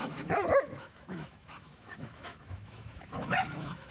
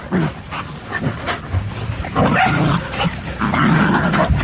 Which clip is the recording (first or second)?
second